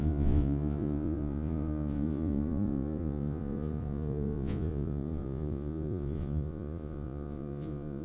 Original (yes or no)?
no